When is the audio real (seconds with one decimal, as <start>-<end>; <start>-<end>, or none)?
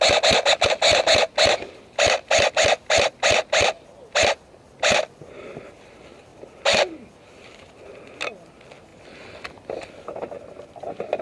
0.0-6.3; 7.8-11.2